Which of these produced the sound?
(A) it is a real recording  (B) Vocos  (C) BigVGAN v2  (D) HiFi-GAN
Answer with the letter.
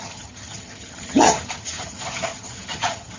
D